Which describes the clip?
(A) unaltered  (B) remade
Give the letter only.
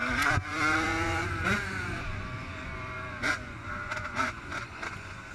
B